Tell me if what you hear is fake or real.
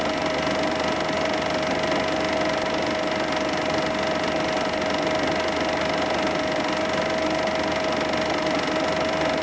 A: real